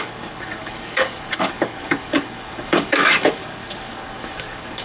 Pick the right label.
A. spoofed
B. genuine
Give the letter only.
A